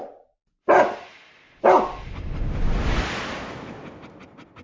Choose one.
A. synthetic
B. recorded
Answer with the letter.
B